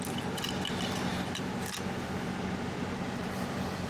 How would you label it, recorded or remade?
recorded